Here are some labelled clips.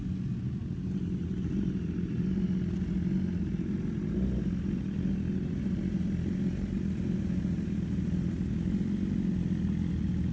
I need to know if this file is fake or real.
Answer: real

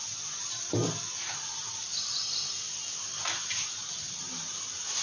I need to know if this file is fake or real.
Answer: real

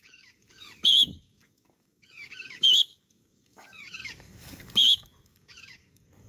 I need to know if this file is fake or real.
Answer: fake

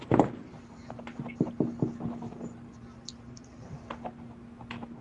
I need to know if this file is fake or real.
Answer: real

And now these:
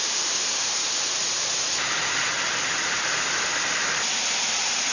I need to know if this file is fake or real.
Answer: fake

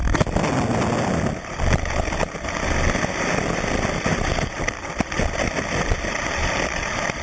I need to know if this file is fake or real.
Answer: real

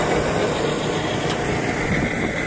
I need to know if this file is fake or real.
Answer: real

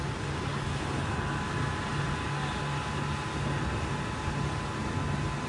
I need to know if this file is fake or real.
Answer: real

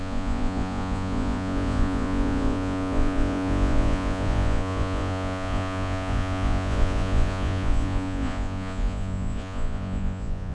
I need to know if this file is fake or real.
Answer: fake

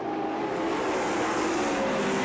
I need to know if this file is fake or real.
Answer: real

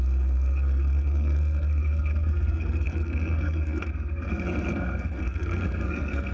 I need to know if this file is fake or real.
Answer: fake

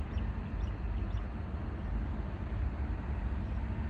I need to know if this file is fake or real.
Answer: real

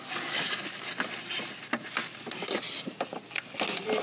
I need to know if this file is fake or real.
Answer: real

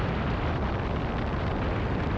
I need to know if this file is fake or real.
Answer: real